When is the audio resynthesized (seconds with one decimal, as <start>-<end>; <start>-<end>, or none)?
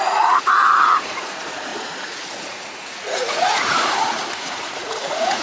0.0-5.4